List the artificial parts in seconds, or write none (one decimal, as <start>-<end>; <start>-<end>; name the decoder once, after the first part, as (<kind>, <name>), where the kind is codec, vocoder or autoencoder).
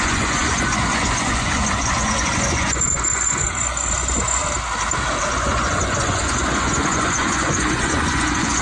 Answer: 0.0-4.4 (vocoder, Vocos); 5.2-8.6